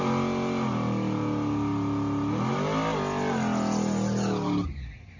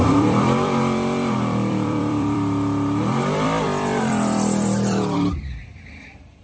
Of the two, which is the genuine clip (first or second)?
first